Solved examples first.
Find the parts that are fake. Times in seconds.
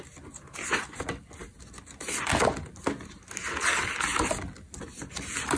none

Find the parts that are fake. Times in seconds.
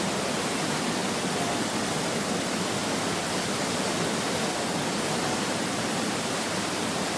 none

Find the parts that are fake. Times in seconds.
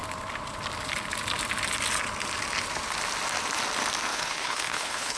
4.1-5.2 (codec, HILCodec)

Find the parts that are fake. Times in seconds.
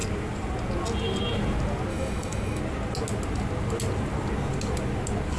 1.9-2.6 (autoencoder, DAC-VAE)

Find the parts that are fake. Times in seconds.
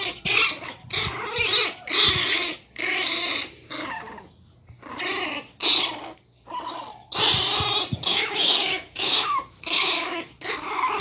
8.1-11.0 (autoencoder, DAC-VAE)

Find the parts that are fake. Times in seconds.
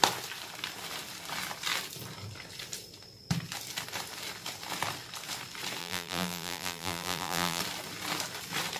5.8-7.6 (vocoder, BigVGAN v2)